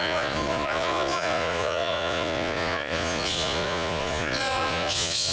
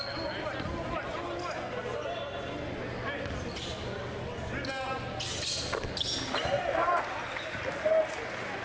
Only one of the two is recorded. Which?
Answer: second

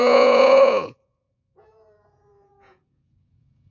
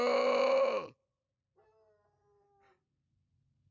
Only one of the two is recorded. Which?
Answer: second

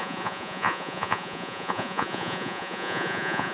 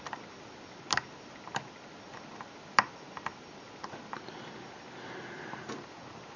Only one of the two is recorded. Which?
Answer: second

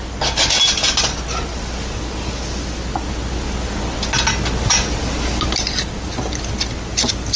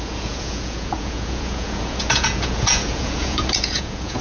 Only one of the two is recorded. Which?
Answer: first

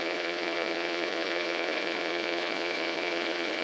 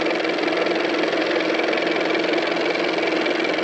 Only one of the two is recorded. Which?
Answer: second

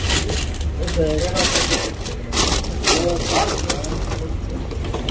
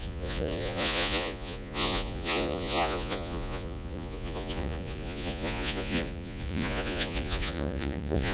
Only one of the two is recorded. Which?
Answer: first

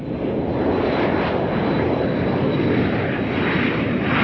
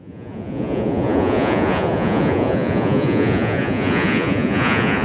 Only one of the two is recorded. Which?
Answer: first